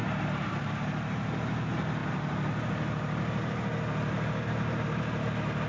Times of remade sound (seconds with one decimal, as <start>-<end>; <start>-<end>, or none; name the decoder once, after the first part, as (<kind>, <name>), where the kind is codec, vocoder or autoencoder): none

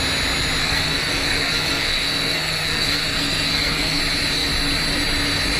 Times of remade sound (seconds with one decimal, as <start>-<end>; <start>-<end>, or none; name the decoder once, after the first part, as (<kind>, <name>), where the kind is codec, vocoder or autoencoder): 0.6-4.0 (codec, SNAC)

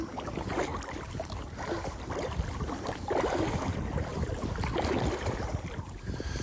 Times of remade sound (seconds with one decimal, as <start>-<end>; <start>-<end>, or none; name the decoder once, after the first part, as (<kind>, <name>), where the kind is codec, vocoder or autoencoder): 0.0-0.7 (vocoder, BigVGAN v2); 3.5-4.1; 4.6-6.4